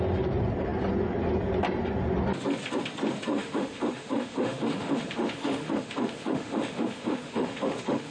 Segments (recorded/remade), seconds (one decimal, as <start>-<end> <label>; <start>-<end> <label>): 0.0-3.3 recorded; 3.3-8.1 remade